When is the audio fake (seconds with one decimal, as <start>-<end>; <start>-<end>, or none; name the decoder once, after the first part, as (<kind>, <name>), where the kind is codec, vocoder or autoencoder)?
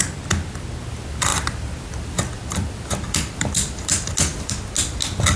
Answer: 1.3-4.5 (vocoder, BigVGAN v2)